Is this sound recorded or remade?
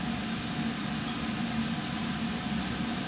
recorded